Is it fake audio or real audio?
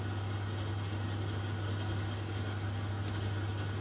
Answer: real